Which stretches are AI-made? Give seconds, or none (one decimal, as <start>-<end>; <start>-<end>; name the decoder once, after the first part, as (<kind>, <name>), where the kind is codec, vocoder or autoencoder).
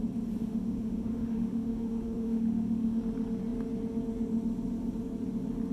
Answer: 0.4-3.0 (autoencoder, DAC-VAE)